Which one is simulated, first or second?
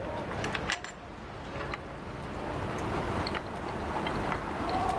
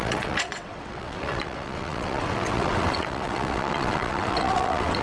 second